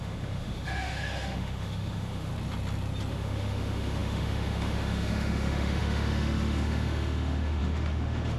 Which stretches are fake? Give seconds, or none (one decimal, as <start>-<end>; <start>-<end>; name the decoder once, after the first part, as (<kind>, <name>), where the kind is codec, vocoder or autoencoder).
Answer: 0.0-2.3 (autoencoder, DAC-VAE); 3.1-8.4